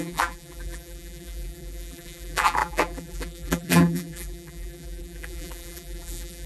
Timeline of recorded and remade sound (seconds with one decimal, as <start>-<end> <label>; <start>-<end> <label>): 0.0-6.5 remade